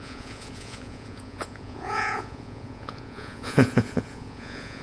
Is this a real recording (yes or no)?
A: no